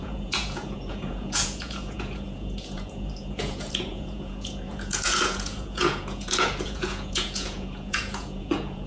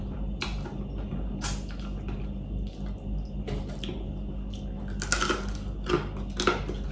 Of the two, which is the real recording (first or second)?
second